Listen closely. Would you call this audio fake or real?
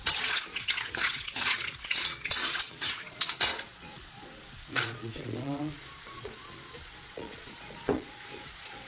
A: fake